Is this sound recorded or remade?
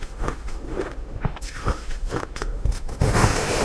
remade